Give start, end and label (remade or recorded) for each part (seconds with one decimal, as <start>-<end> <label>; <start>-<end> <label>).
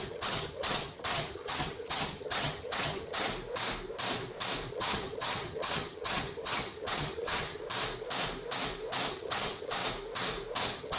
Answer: 0.0-3.3 remade; 3.3-4.7 recorded; 4.7-7.6 remade; 7.6-9.1 recorded; 9.1-9.8 remade; 9.8-10.6 recorded; 10.6-11.0 remade